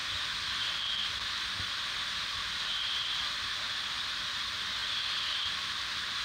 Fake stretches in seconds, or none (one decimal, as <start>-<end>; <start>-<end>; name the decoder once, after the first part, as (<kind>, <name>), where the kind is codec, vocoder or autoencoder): none